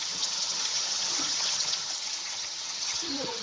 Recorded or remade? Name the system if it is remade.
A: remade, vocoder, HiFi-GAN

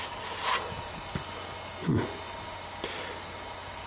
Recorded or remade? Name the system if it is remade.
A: recorded